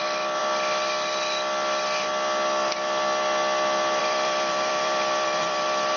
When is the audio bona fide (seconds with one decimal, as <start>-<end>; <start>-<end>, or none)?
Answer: 0.4-4.0